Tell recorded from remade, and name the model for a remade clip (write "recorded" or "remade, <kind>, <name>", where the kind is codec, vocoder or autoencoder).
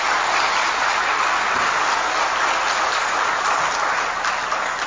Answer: recorded